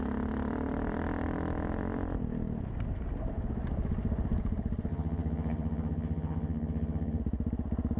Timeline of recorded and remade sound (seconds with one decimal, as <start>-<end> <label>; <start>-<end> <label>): 0.0-4.9 recorded; 4.9-7.2 remade; 7.2-8.0 recorded